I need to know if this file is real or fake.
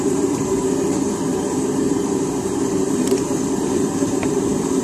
fake